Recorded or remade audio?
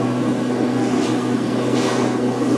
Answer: remade